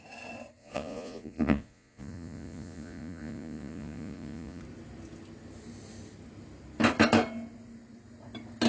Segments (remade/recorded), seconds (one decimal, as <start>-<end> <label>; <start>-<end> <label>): 0.0-0.6 recorded; 0.6-4.6 remade; 4.6-8.7 recorded